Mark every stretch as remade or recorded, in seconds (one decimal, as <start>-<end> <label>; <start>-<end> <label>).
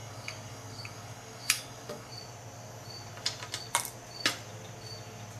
0.0-2.1 remade; 2.1-5.4 recorded